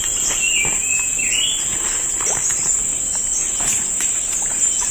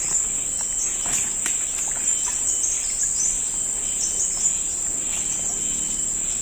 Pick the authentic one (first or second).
second